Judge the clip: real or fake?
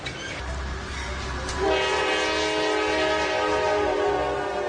real